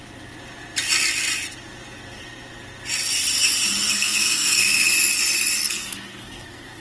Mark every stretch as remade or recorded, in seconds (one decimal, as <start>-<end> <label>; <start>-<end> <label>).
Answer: 0.0-3.9 recorded; 3.9-4.9 remade; 4.9-5.7 recorded; 5.7-6.8 remade